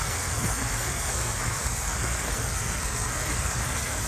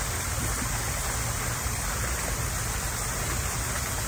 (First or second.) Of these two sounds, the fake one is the first